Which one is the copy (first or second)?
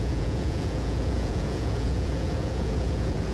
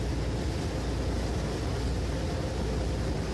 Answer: first